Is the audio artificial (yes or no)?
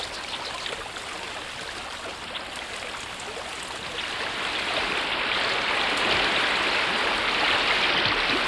no